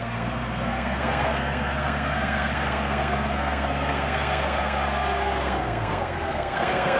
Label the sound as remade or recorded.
remade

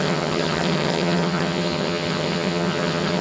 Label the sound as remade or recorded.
remade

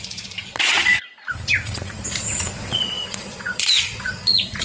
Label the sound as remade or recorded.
remade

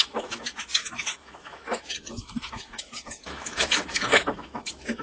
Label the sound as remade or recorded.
remade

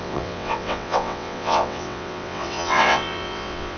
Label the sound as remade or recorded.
remade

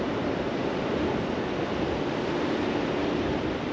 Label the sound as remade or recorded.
recorded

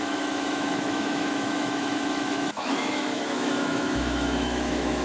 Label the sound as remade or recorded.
remade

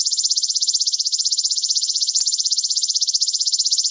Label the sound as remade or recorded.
remade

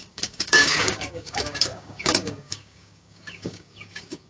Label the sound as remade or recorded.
remade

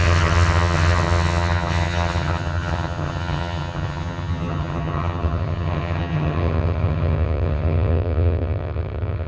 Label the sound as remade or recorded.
remade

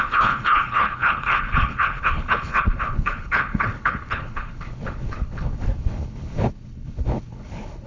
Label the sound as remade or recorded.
remade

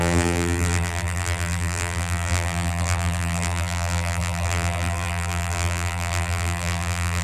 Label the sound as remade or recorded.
remade